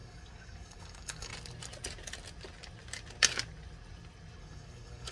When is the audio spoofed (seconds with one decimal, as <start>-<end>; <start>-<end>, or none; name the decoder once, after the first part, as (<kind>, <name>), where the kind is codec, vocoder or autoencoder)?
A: 0.0-1.3 (codec, DAC); 4.4-5.1